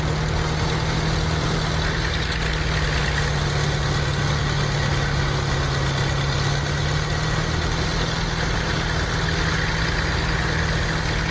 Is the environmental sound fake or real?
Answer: real